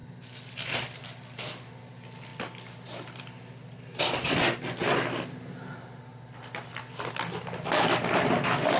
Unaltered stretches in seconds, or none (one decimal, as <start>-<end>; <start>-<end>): 1.0-2.3; 3.2-3.9; 4.6-6.1